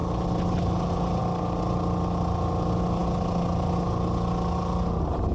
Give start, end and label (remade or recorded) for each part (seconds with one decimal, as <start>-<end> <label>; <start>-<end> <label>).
0.0-5.3 recorded